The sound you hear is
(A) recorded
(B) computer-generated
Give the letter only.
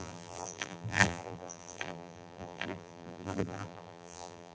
B